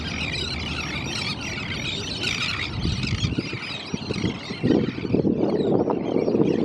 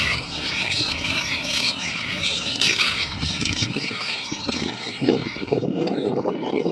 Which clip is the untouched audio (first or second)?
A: first